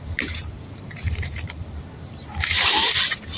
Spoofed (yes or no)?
yes